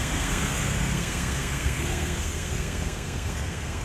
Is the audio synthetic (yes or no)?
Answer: yes